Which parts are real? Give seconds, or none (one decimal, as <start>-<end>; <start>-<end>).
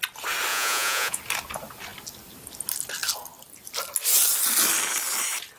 0.0-0.5; 1.2-5.6